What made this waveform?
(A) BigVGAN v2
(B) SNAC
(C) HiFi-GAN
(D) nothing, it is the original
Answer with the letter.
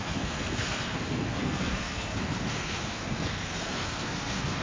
B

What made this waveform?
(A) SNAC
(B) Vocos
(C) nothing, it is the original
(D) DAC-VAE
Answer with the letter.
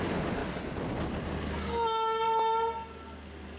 C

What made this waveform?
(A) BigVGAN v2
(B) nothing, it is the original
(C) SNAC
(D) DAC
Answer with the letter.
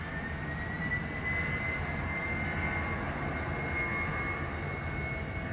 B